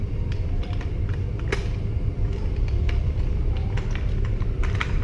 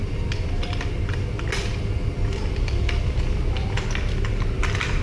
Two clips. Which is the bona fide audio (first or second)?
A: second